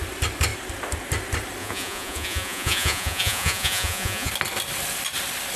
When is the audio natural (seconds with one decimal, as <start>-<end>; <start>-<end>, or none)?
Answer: 0.0-1.6; 4.3-5.6